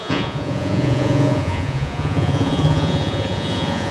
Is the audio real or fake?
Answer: fake